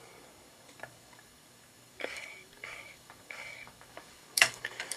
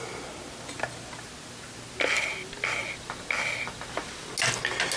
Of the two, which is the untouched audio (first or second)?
second